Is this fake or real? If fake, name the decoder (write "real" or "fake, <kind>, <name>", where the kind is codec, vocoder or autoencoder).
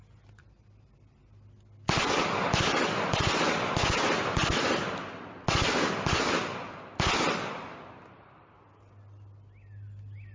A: real